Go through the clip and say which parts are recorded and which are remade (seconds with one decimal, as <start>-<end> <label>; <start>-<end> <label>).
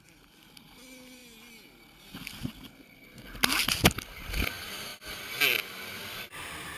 0.0-6.8 recorded